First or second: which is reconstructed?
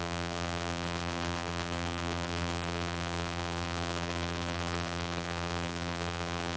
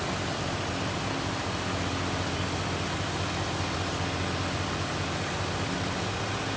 first